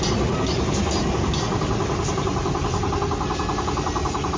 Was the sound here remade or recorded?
recorded